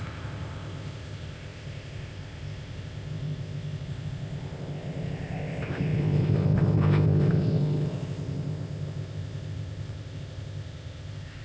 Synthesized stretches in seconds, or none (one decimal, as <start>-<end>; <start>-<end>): 0.0-11.4